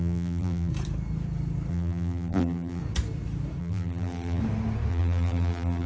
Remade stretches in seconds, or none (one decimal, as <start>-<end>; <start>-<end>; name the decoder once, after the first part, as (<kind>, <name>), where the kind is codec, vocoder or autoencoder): 0.0-0.7 (vocoder, BigVGAN v2); 1.7-2.8; 3.6-4.4; 4.9-5.9